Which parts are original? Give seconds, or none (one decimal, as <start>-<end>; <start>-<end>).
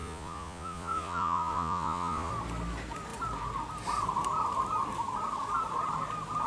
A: 2.3-6.5